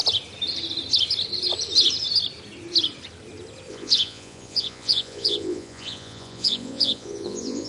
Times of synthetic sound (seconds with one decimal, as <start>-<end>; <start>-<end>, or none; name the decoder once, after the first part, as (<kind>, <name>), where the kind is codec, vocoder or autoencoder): 3.7-7.7 (vocoder, Vocos)